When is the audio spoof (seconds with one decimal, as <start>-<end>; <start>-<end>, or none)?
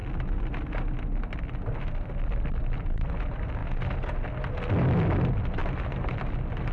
2.6-3.6; 4.7-6.7